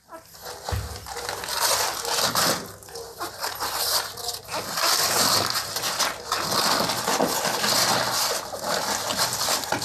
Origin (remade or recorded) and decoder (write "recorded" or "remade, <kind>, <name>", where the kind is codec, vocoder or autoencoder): recorded